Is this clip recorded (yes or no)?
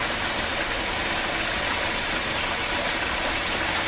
yes